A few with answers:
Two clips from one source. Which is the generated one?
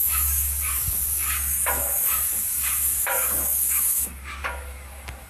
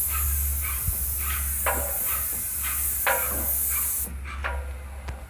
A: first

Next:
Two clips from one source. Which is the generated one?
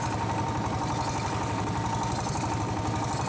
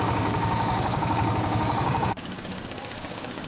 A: second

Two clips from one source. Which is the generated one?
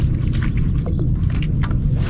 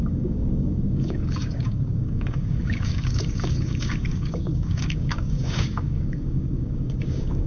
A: second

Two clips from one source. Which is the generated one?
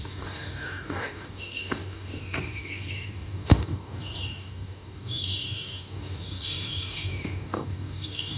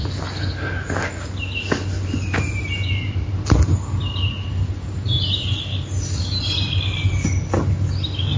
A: first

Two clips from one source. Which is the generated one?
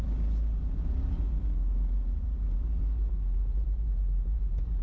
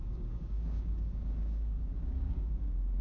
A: second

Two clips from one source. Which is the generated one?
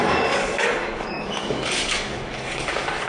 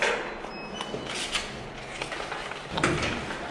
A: first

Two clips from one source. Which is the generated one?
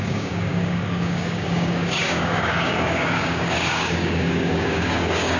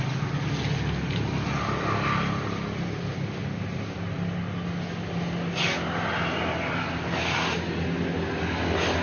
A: first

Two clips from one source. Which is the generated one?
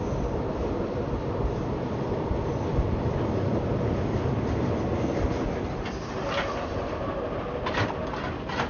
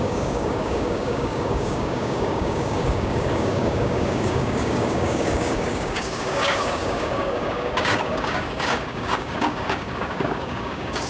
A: second